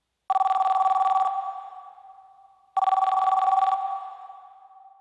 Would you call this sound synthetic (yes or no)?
no